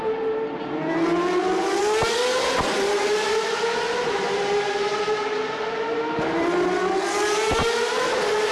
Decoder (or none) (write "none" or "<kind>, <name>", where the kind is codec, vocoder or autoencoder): none